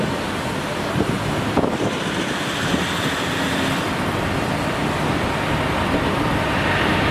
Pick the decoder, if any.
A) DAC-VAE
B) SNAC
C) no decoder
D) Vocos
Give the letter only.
C